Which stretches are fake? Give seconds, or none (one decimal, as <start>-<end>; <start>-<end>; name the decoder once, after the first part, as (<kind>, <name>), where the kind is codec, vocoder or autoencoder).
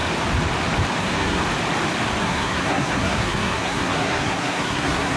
1.0-1.4 (codec, SNAC); 2.2-5.2